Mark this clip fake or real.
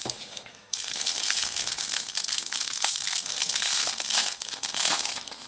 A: fake